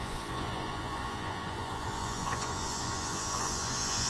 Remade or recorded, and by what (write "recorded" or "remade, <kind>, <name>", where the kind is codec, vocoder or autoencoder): remade, vocoder, Vocos